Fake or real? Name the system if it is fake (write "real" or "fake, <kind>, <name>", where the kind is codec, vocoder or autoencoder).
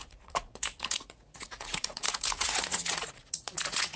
fake, vocoder, Vocos